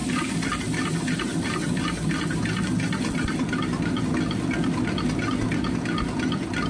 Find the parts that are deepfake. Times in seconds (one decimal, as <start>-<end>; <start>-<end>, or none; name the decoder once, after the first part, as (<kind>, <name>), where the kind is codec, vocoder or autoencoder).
none